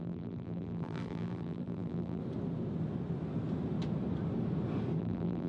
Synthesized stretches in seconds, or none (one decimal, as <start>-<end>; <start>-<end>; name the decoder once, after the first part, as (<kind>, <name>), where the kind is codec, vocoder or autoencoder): 0.0-2.2 (vocoder, BigVGAN v2); 5.0-5.5